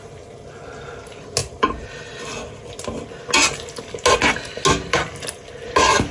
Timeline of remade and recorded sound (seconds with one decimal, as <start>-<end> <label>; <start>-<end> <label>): 0.0-1.4 recorded; 1.4-2.2 remade; 2.2-6.1 recorded